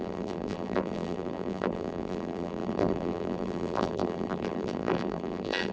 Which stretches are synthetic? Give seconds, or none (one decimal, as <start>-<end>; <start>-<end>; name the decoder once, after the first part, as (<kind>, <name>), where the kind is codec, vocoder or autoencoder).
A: 0.0-5.7 (vocoder, BigVGAN v2)